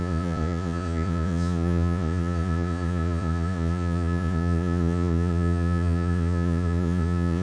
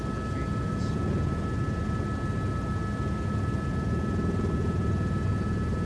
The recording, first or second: second